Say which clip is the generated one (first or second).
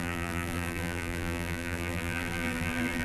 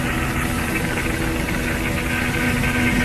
first